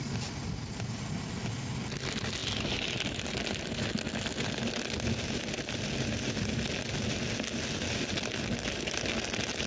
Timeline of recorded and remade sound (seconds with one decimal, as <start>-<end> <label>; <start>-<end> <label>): 0.0-9.7 recorded